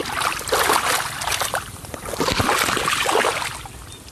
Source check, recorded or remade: recorded